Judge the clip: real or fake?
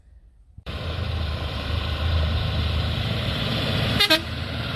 fake